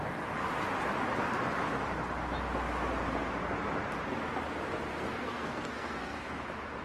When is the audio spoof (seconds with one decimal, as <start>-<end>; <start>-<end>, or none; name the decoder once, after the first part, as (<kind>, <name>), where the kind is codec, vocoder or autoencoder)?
4.9-6.2 (codec, SNAC)